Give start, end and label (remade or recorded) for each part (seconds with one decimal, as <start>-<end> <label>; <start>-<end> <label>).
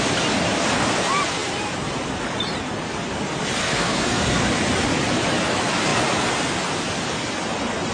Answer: 0.0-3.6 recorded; 3.6-4.5 remade; 4.5-7.9 recorded